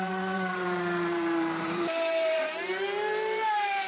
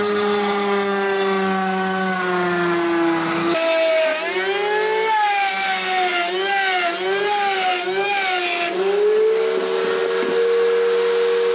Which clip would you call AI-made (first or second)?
first